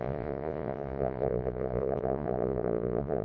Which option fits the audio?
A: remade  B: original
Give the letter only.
A